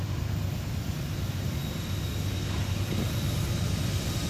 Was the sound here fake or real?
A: real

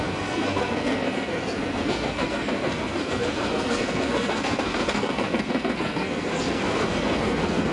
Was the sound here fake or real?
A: fake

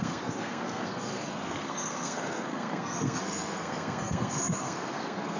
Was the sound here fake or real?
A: fake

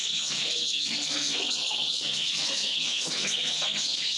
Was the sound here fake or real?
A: fake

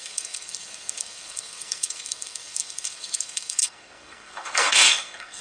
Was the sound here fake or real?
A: fake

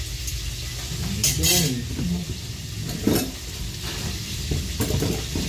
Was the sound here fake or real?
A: real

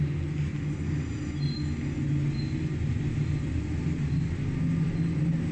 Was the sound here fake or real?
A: real